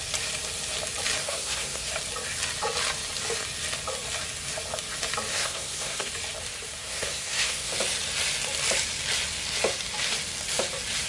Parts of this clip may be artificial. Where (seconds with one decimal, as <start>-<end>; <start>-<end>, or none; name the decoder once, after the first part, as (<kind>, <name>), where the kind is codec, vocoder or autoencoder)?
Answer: 1.2-1.9 (codec, SNAC); 5.3-6.1; 6.8-7.7